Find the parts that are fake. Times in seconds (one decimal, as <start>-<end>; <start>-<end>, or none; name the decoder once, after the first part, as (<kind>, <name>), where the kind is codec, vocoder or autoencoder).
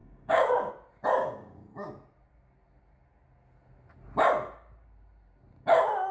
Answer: 0.0-0.7 (codec, DAC); 1.2-1.9